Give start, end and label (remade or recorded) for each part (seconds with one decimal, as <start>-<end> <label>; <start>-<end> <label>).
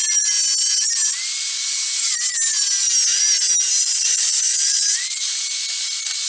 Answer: 0.0-3.8 recorded; 3.8-5.3 remade; 5.3-6.3 recorded